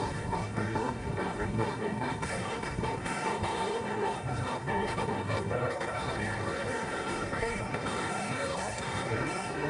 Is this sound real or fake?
fake